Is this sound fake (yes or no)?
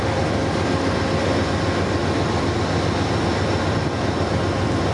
no